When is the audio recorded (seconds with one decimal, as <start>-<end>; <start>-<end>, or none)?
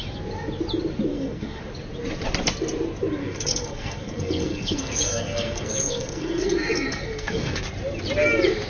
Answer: 0.0-1.1; 1.6-3.2; 7.6-8.7